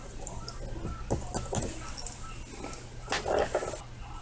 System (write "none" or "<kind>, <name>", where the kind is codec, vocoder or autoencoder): none